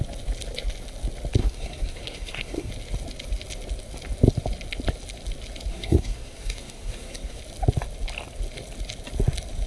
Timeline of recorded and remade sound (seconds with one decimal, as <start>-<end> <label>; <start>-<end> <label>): 0.0-1.4 recorded; 1.4-2.7 remade; 2.7-5.7 recorded; 5.7-7.4 remade; 7.4-9.7 recorded